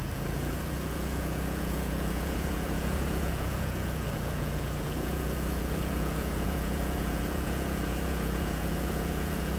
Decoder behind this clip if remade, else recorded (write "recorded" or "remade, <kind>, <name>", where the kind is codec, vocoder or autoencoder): remade, vocoder, Vocos